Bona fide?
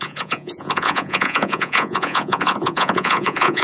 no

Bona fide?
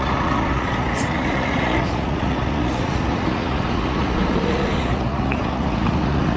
no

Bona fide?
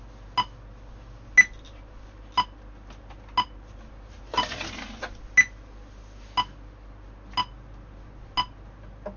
yes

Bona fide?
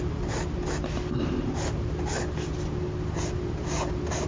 yes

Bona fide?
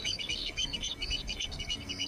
no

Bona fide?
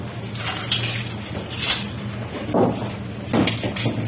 yes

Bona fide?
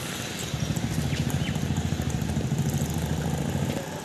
no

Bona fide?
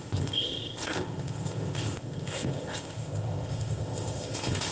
no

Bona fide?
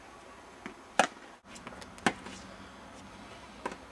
yes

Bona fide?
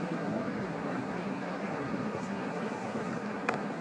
no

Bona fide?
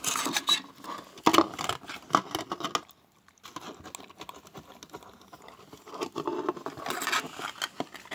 yes